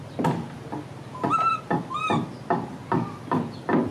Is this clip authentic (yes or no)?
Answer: yes